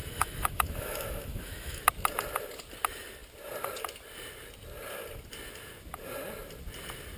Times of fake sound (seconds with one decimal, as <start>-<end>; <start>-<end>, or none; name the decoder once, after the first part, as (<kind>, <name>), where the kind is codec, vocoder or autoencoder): 0.0-1.8 (autoencoder, DAC-VAE)